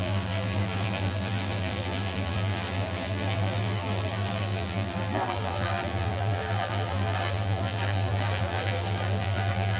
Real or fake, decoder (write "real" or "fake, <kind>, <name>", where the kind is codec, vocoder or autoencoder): fake, vocoder, BigVGAN v2